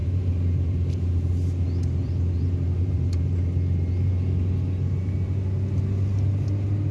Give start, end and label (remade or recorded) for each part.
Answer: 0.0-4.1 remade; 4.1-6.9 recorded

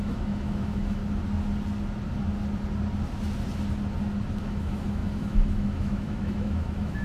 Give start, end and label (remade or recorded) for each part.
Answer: 0.0-1.0 remade; 1.0-4.4 recorded; 4.4-7.0 remade

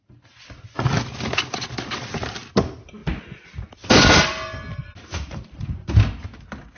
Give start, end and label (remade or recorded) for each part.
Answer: 0.0-4.8 recorded; 4.8-5.9 remade; 5.9-6.8 recorded

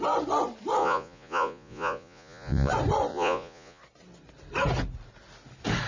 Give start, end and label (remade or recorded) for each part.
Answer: 0.0-0.8 recorded; 0.8-2.7 remade; 2.7-3.1 recorded; 3.1-3.8 remade; 3.8-5.9 recorded

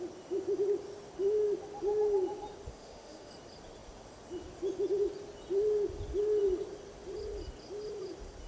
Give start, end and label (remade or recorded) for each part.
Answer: 0.0-2.7 recorded; 2.7-3.3 remade; 3.3-8.5 recorded